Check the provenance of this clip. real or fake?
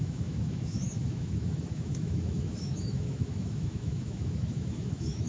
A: fake